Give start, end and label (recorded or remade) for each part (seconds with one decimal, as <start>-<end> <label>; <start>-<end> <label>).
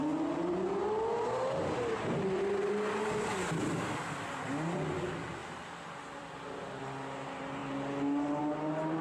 0.0-5.4 recorded; 5.4-6.8 remade; 6.8-9.0 recorded